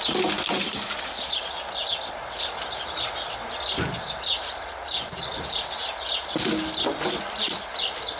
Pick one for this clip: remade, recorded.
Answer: recorded